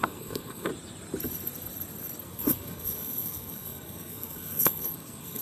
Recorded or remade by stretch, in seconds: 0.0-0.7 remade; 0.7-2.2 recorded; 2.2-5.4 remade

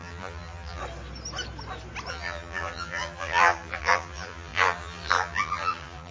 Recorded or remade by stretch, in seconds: 0.0-0.8 remade; 0.8-2.1 recorded; 2.1-6.1 remade

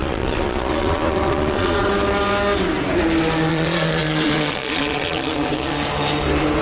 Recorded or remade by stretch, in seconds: 0.0-1.9 remade; 1.9-3.5 recorded; 3.5-5.7 remade; 5.7-6.6 recorded

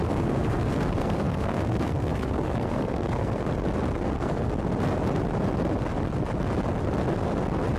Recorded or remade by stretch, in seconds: 0.0-3.5 remade; 3.5-3.9 recorded; 3.9-4.5 remade; 4.5-7.8 recorded

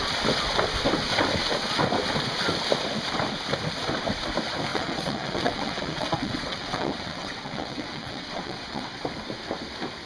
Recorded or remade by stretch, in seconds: 0.0-4.7 recorded; 4.7-9.0 remade; 9.0-10.1 recorded

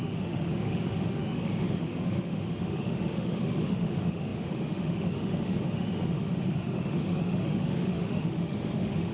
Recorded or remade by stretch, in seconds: 0.0-9.1 remade

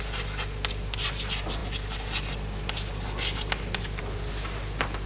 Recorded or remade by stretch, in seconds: 0.0-5.1 recorded

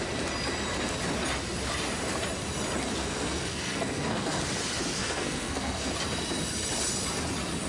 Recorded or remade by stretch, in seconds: 0.0-3.0 recorded; 3.0-4.4 remade; 4.4-5.0 recorded; 5.0-5.9 remade; 5.9-7.7 recorded